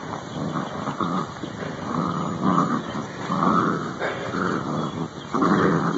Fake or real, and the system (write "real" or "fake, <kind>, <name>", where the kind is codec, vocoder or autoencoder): real